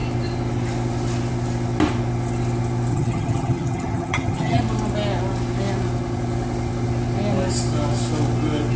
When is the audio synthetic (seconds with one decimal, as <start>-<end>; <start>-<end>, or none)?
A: 2.9-4.6